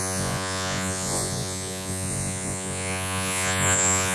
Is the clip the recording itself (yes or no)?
no